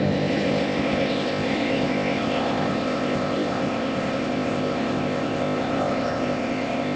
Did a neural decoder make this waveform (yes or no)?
yes